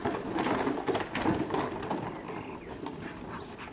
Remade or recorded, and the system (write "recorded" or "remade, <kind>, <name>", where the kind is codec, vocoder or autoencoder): recorded